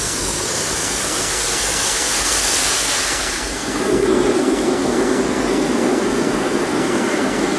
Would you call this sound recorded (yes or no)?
no